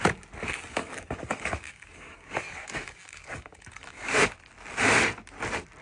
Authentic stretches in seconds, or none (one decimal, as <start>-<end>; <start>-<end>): 0.0-0.7; 4.2-5.8

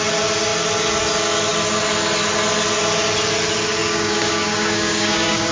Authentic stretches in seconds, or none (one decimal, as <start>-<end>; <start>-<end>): 0.0-3.8

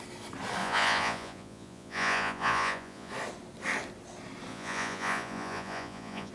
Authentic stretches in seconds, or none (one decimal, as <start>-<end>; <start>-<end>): 0.0-0.6; 3.1-4.5

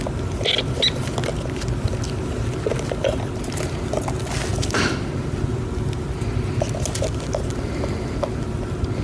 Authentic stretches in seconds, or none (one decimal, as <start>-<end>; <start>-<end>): 0.0-4.5; 5.6-9.0

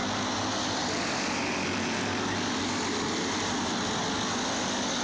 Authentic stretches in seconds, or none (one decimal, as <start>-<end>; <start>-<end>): 0.0-5.0

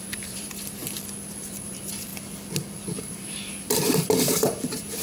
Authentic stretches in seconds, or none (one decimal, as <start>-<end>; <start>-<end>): 0.8-1.4; 2.1-3.0

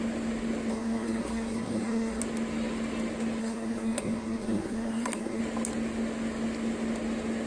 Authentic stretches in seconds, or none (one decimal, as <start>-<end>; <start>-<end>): 0.0-0.7; 2.2-3.4; 5.4-7.5

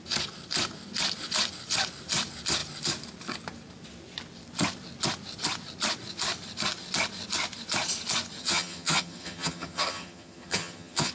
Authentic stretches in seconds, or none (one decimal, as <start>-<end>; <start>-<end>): 0.0-8.4